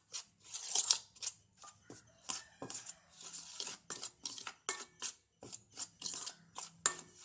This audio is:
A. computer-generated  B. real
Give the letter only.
B